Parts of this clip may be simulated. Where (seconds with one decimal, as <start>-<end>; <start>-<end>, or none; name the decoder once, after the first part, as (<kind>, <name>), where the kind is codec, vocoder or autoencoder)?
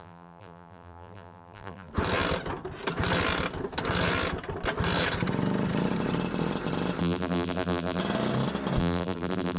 0.0-1.9 (vocoder, BigVGAN v2); 7.0-8.0; 8.8-9.6